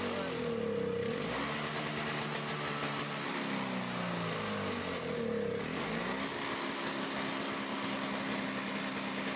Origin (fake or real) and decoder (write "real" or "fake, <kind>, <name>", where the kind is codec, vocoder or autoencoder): real